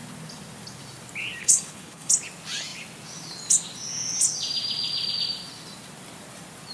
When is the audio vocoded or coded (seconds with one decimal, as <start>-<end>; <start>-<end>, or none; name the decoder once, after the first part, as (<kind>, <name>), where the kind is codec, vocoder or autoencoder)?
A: 1.4-2.1 (codec, HILCodec)